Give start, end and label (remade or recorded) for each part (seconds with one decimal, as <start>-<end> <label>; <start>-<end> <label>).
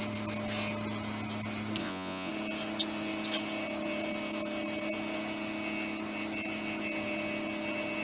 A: 0.0-1.8 recorded; 1.8-2.3 remade; 2.3-8.0 recorded